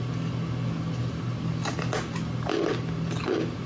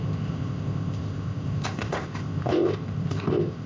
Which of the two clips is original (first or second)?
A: first